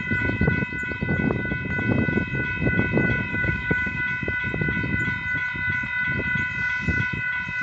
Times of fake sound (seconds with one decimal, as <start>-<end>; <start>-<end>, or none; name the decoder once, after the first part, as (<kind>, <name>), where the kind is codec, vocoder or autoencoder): 3.3-4.0 (codec, DAC)